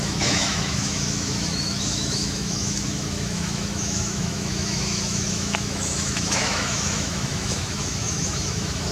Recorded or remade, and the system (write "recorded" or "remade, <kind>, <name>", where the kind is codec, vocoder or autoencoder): remade, autoencoder, DAC-VAE